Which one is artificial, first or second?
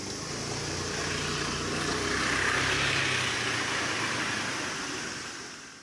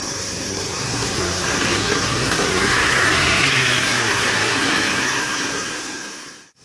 second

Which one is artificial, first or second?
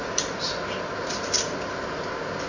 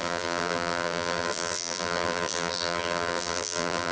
second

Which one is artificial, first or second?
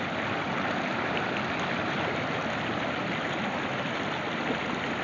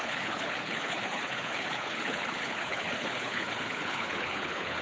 second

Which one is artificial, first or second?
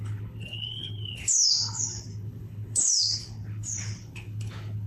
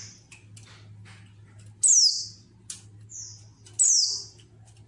first